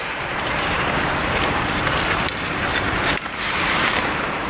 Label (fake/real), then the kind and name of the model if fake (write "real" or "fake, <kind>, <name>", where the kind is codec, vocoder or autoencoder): fake, vocoder, BigVGAN v2